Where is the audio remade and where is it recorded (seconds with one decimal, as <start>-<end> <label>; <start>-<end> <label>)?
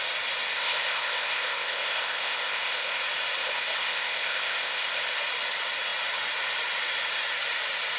0.0-0.5 recorded; 0.5-3.0 remade; 3.0-3.4 recorded; 3.4-5.0 remade; 5.0-8.0 recorded